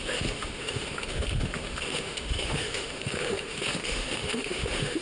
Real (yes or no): no